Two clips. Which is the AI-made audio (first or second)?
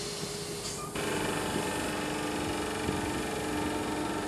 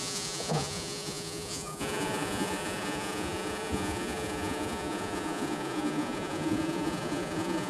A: second